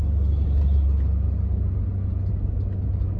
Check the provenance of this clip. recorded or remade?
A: recorded